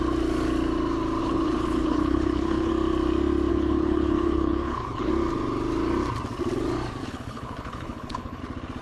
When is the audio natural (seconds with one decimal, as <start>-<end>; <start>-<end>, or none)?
0.0-1.2; 2.7-3.5; 5.1-7.0; 8.4-8.8